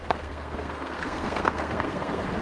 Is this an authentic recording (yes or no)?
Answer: no